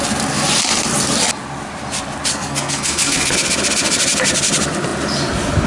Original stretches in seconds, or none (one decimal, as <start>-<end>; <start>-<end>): 0.0-2.3; 3.3-5.7